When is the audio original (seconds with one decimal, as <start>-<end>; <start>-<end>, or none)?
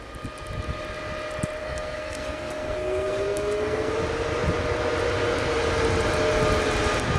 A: 0.0-1.6; 3.9-7.2